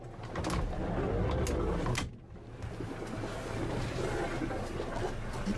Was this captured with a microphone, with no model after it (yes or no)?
yes